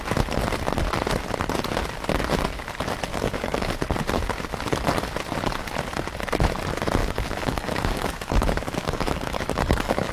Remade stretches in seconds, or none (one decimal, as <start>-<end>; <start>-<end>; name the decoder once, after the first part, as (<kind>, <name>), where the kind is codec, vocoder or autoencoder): 3.1-3.7 (codec, DAC); 7.0-10.1

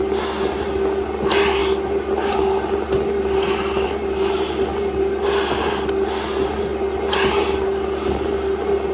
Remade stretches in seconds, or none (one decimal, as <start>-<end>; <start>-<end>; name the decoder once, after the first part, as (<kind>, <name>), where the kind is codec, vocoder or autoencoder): none

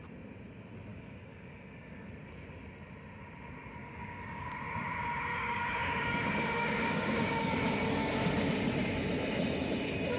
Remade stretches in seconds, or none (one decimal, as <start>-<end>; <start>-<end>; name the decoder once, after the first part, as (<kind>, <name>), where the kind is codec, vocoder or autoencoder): 0.9-2.1 (codec, DAC); 3.8-4.5; 5.3-7.5

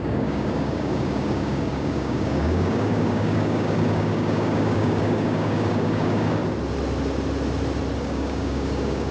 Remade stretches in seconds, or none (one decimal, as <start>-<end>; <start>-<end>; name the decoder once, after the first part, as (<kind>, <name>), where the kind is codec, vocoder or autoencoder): 0.0-6.4 (codec, DAC); 8.0-9.1

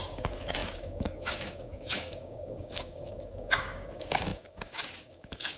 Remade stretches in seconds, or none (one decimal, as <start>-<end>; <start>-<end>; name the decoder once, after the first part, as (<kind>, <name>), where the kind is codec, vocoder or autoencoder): 0.0-5.6 (codec, DAC)